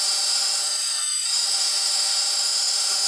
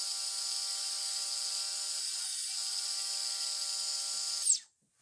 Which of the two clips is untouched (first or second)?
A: second